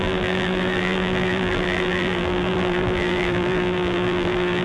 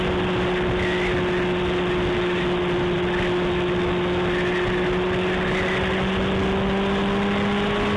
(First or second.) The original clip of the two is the second